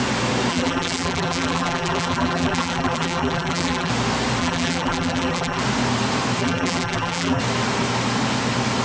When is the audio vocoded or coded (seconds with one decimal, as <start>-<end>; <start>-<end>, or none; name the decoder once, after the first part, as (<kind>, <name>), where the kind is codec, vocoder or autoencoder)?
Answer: 0.5-3.9 (vocoder, BigVGAN v2); 4.4-5.6; 6.4-7.4